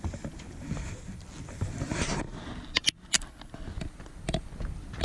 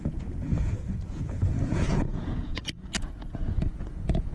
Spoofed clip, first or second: second